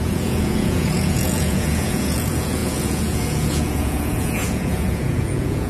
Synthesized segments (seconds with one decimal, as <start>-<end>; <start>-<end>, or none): 0.0-5.7